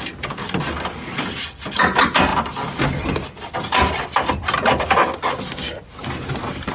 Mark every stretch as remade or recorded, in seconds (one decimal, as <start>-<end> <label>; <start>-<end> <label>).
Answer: 0.0-6.7 recorded